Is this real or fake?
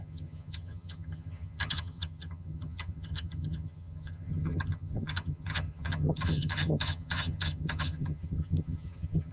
fake